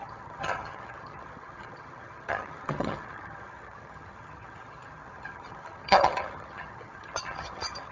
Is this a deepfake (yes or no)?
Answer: yes